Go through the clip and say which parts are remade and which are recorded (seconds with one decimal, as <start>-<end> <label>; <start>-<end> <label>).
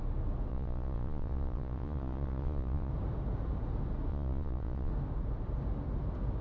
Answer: 0.0-0.5 recorded; 0.5-2.9 remade; 2.9-4.1 recorded; 4.1-4.9 remade; 4.9-6.4 recorded